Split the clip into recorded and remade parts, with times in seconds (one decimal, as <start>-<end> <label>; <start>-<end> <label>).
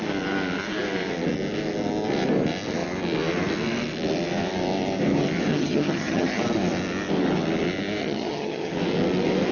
0.0-5.5 recorded; 5.5-6.4 remade; 6.4-8.0 recorded; 8.0-8.7 remade; 8.7-9.5 recorded